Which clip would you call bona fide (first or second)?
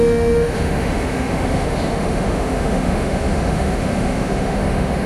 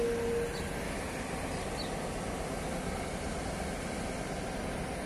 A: second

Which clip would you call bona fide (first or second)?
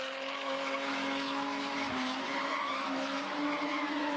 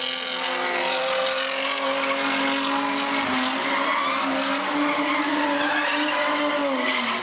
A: second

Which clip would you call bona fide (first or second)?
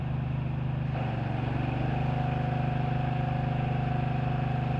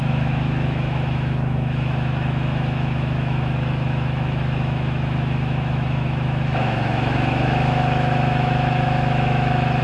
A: first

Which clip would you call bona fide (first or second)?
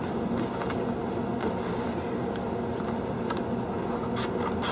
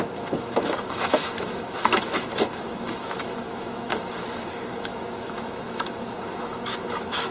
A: first